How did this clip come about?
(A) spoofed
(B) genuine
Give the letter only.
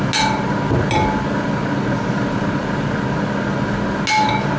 B